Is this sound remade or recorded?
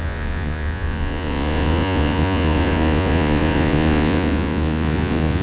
remade